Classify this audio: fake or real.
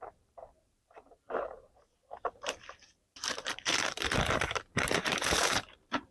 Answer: fake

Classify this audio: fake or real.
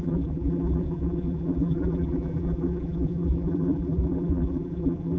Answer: fake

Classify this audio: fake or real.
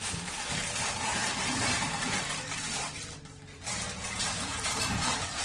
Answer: fake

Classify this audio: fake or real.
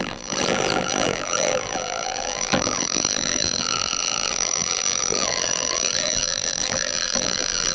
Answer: fake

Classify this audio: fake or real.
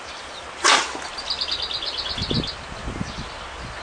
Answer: real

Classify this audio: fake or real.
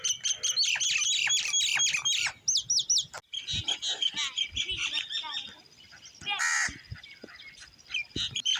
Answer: real